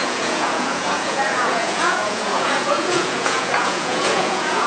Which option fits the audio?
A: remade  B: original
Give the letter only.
A